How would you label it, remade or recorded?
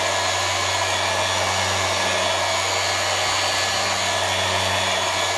recorded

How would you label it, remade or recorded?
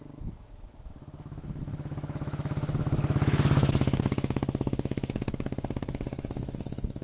remade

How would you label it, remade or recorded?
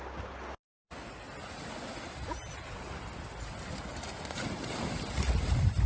recorded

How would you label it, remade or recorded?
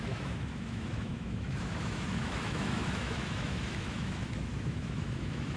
remade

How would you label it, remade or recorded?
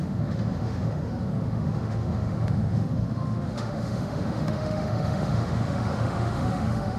remade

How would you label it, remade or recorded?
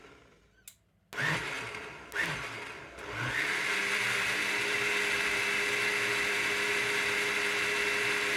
recorded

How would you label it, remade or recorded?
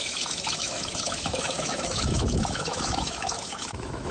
remade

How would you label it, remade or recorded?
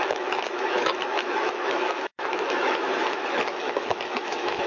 remade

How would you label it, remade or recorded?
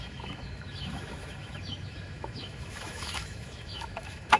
remade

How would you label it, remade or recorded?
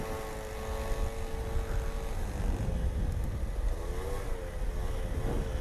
recorded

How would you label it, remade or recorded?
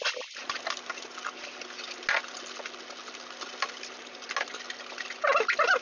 recorded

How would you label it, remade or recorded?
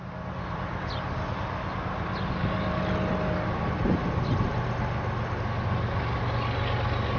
recorded